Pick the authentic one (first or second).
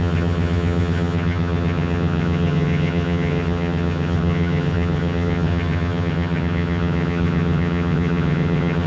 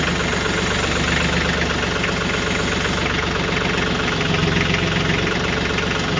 second